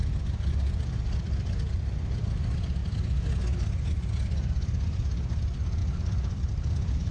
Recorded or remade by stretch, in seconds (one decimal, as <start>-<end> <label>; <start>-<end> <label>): 0.0-2.8 remade; 2.8-4.1 recorded; 4.1-7.1 remade